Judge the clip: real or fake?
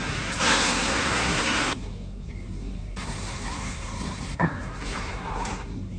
fake